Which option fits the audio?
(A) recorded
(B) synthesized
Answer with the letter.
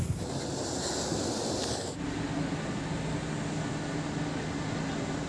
A